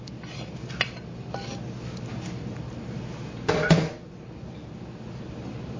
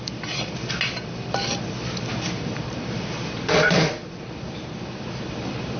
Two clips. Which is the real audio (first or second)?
first